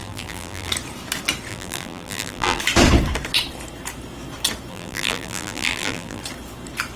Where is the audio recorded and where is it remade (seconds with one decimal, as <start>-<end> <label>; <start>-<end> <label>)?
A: 0.0-0.7 remade; 0.7-1.5 recorded; 1.5-2.6 remade; 2.6-4.7 recorded; 4.7-6.2 remade; 6.2-7.0 recorded